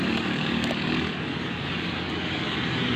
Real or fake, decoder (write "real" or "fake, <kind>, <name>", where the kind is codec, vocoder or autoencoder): fake, codec, DAC